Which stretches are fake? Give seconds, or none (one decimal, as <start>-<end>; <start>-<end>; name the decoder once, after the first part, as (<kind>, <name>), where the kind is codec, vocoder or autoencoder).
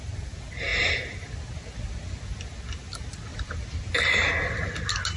0.7-2.2 (vocoder, BigVGAN v2); 3.3-3.9